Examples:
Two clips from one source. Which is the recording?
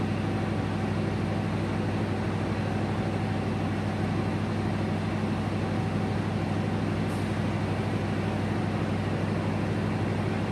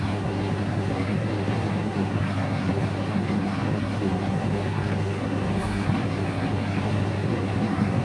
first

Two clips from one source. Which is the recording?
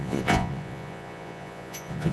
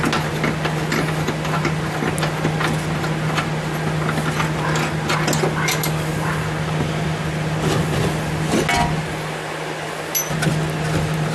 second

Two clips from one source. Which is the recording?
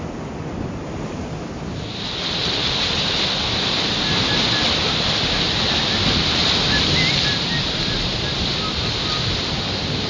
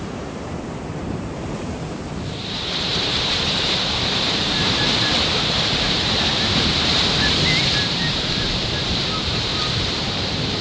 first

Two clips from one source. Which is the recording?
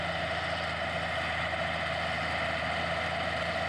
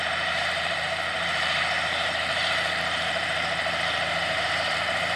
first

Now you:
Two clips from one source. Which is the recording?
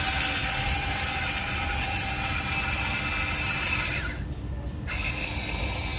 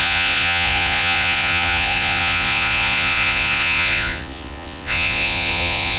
first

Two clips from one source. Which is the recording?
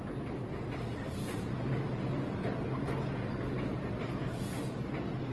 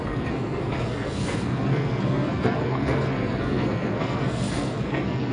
first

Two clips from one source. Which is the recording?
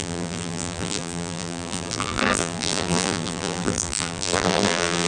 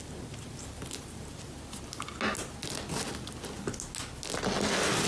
second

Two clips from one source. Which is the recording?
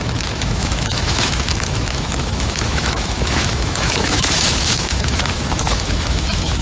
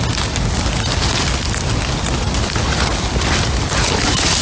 second